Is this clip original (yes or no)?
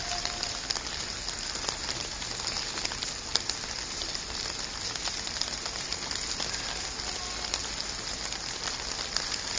yes